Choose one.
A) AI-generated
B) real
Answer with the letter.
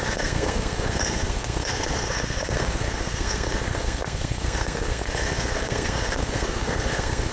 A